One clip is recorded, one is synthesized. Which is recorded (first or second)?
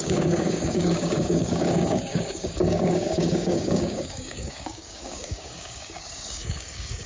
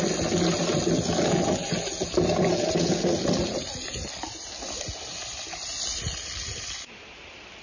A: second